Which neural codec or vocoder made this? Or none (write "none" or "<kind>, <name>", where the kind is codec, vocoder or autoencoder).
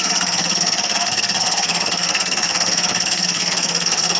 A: codec, SNAC